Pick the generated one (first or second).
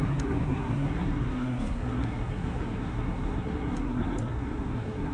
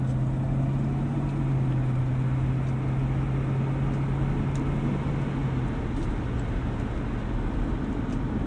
first